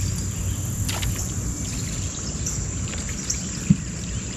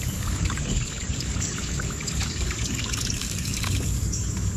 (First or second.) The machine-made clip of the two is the second